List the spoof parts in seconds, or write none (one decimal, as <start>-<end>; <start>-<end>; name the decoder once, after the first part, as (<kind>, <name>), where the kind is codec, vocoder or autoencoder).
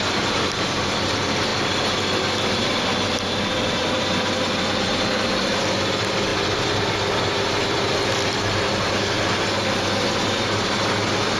none